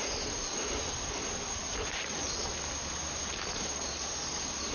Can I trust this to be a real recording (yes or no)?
yes